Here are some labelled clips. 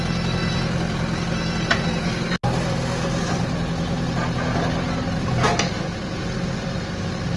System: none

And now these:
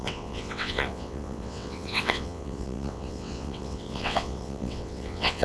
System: vocoder, WaveNeXt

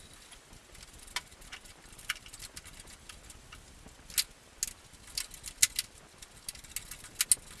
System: none